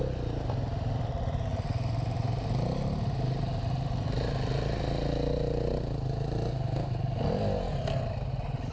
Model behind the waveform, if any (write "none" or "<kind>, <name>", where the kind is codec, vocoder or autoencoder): none